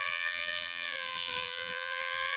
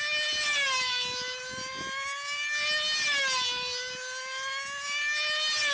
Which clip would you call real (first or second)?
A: second